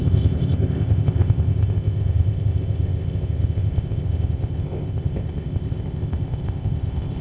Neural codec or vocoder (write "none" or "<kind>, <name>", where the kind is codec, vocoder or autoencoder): codec, ZipCodec